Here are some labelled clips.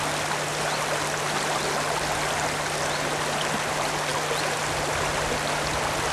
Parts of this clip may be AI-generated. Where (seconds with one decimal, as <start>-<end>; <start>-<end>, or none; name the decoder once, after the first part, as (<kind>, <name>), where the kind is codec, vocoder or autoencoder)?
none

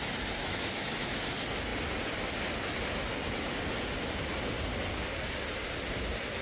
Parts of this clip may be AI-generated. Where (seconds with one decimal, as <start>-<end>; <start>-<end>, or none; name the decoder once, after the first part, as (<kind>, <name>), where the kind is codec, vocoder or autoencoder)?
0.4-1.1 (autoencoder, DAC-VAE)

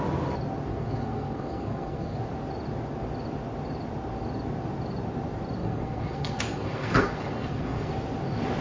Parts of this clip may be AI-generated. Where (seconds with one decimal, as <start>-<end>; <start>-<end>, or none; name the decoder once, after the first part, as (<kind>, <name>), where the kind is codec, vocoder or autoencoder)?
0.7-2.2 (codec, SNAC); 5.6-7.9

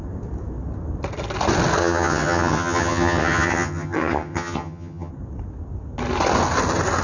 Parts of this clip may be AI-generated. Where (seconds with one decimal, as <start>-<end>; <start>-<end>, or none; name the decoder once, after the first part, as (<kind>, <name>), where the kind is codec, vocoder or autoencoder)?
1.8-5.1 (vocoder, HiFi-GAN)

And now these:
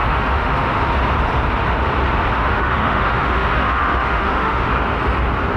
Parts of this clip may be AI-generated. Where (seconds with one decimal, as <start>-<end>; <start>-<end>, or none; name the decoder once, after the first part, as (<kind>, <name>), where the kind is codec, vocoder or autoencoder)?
0.0-0.8 (autoencoder, DAC-VAE); 2.4-4.7

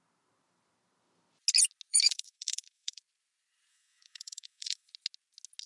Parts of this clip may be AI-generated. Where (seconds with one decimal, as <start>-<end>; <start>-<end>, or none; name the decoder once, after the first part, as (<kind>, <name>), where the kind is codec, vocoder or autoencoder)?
1.9-3.0 (autoencoder, DAC-VAE); 3.7-4.9

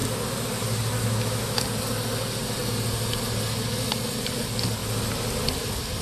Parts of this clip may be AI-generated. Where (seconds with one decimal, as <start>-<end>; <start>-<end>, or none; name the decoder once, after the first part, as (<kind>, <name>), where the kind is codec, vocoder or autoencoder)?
1.0-1.6 (autoencoder, DAC-VAE)

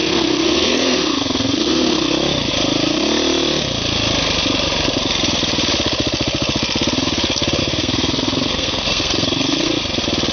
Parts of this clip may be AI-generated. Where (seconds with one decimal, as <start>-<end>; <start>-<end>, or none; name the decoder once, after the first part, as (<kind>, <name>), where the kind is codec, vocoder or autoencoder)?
0.0-2.1 (codec, SNAC); 7.6-9.7